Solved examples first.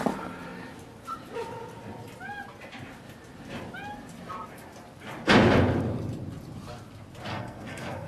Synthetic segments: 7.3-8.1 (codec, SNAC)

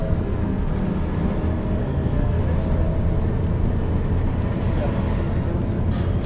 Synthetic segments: 0.0-0.7 (codec, SNAC); 1.8-2.4

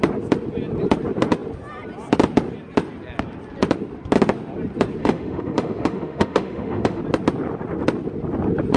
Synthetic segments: 5.0-7.0 (autoencoder, DAC-VAE)

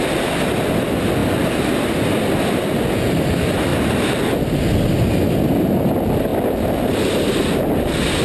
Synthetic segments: 3.7-4.3 (vocoder, BigVGAN v2); 6.3-8.2

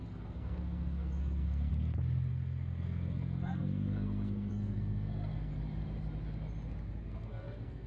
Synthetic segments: 0.0-1.7 (codec, SNAC); 2.3-5.5; 7.0-7.9

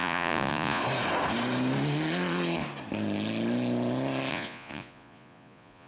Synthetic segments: 0.0-0.8 (vocoder, Vocos); 4.3-5.9